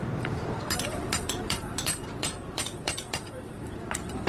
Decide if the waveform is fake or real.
fake